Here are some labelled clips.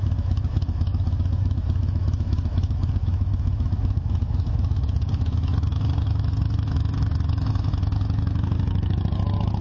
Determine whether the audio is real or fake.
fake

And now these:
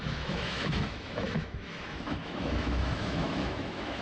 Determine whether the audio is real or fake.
fake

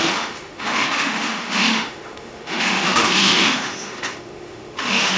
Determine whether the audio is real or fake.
fake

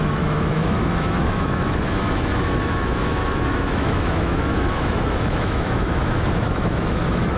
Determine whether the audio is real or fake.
fake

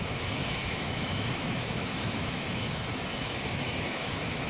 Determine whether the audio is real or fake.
fake